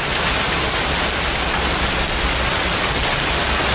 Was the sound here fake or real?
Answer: real